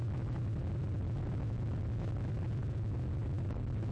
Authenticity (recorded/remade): recorded